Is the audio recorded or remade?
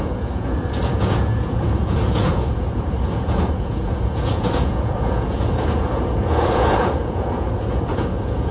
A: remade